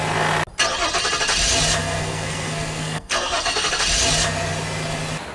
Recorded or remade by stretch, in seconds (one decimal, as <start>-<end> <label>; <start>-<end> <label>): 0.0-1.8 recorded; 1.8-3.8 remade; 3.8-5.3 recorded